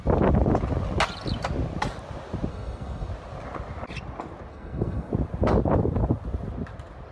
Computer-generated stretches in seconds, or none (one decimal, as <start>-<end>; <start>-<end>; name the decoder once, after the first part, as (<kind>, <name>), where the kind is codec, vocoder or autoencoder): 2.5-3.1 (codec, SNAC); 4.5-5.1